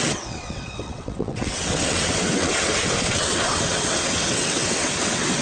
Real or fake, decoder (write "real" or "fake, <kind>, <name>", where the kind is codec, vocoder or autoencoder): fake, vocoder, WaveNeXt